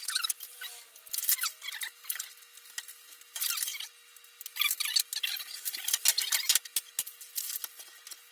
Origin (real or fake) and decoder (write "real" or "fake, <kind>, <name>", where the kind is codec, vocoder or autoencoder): real